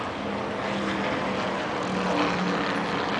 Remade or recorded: recorded